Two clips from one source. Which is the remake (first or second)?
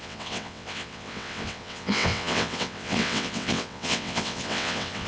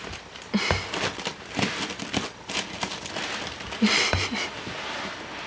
first